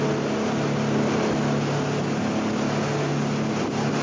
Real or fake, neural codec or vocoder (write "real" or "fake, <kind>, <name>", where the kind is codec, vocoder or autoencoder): real